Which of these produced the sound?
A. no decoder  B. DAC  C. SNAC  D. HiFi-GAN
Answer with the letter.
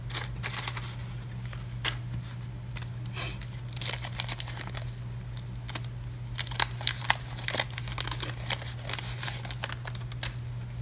A